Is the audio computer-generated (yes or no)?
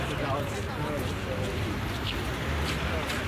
no